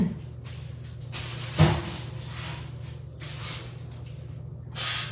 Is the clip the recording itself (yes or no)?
yes